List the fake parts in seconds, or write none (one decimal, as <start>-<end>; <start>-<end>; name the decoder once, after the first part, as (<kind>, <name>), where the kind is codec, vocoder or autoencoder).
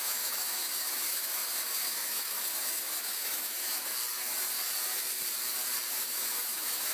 0.0-3.9 (autoencoder, DAC-VAE); 5.9-6.9